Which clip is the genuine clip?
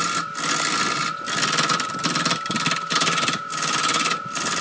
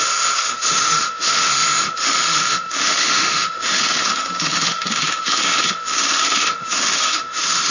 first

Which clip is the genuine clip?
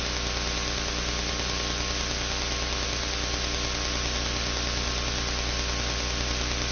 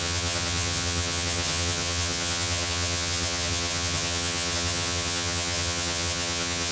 first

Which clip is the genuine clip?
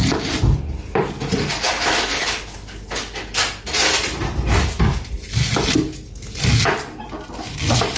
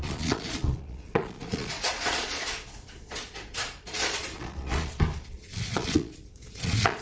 first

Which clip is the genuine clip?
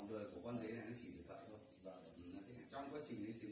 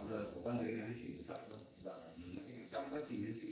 first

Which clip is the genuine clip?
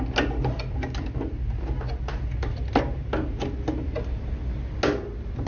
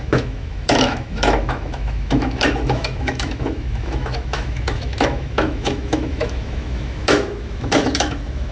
first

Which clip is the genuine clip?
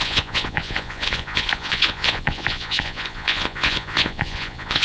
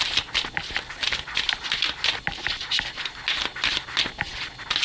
second